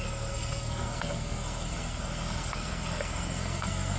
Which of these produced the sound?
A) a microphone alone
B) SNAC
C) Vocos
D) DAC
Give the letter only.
B